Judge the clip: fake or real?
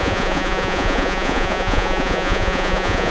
fake